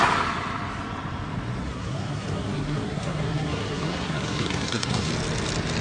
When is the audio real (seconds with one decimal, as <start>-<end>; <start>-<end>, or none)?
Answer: 0.0-1.6; 5.1-5.8